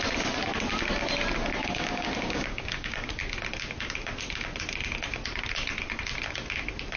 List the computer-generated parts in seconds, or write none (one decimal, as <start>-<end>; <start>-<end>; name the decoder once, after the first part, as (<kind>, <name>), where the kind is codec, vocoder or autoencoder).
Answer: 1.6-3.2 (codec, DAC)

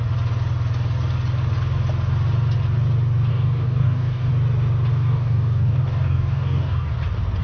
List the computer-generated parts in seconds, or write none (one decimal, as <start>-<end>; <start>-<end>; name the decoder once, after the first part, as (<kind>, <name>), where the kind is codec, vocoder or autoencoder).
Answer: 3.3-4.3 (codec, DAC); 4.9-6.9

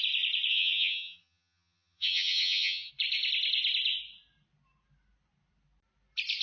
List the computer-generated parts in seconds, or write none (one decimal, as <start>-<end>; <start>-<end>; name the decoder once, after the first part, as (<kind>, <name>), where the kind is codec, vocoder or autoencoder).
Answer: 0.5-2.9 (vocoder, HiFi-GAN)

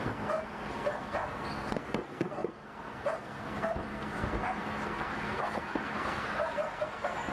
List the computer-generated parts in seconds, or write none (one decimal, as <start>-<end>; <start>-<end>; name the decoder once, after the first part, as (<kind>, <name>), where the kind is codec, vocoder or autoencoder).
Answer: 0.0-7.3 (codec, SNAC)

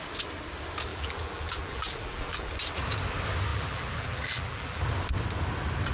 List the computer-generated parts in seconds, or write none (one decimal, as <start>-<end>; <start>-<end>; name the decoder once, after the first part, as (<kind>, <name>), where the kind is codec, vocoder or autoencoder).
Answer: 0.9-2.5 (vocoder, BigVGAN v2); 3.5-4.8